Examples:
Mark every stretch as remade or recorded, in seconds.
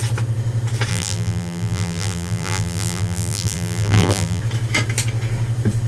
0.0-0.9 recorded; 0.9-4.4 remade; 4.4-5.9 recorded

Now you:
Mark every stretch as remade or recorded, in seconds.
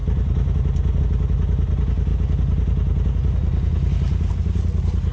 0.0-5.1 recorded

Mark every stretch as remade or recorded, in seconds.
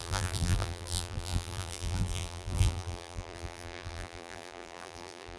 0.0-5.4 remade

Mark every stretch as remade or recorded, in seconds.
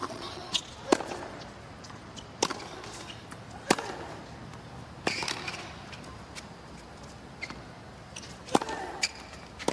0.0-0.6 remade; 0.6-9.7 recorded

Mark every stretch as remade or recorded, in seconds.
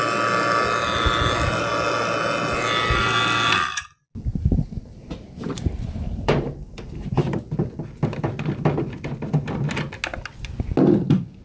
0.0-4.3 recorded; 4.3-7.4 remade; 7.4-11.4 recorded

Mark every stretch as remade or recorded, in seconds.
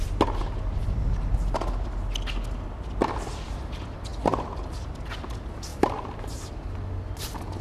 0.0-5.7 recorded; 5.7-6.3 remade; 6.3-7.6 recorded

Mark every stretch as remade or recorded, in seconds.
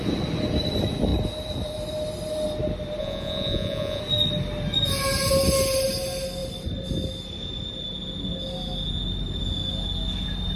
0.0-3.0 recorded; 3.0-4.0 remade; 4.0-10.6 recorded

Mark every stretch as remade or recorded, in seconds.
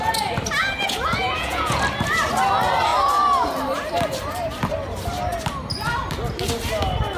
0.0-0.6 recorded; 0.6-1.8 remade; 1.8-7.2 recorded